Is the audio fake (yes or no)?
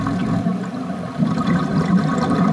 yes